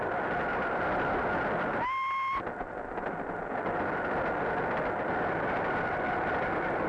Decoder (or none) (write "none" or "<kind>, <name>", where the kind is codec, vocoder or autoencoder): none